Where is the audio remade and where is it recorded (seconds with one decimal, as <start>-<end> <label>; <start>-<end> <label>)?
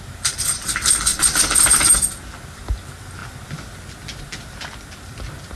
0.0-5.6 recorded